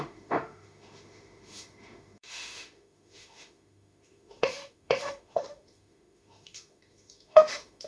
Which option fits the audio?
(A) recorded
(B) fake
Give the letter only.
B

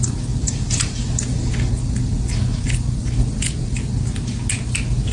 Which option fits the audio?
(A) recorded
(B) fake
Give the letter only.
A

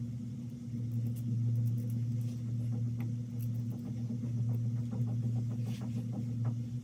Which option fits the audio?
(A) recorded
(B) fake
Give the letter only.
A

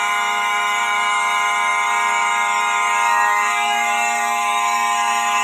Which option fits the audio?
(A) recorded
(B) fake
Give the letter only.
B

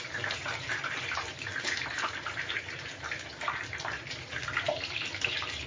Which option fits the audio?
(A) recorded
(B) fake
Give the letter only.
B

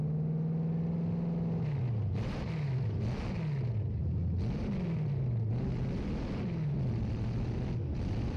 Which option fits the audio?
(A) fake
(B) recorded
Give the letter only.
B